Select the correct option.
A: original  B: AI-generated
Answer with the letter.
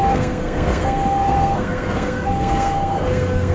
B